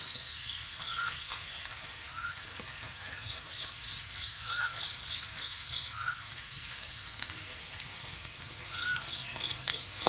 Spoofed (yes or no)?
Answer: yes